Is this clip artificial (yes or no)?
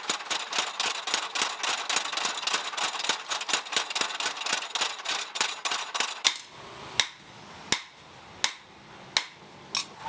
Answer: no